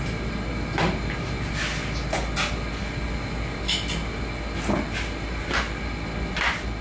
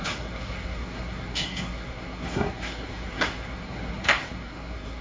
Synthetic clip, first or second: second